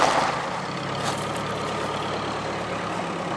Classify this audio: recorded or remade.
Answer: recorded